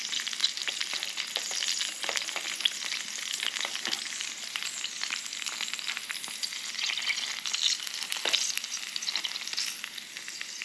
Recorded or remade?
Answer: recorded